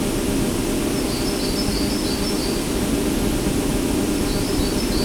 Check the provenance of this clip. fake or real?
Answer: real